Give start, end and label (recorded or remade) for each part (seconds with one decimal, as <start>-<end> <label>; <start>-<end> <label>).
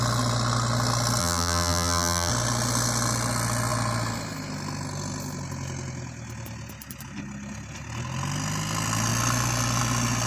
0.0-1.2 recorded; 1.2-2.3 remade; 2.3-10.3 recorded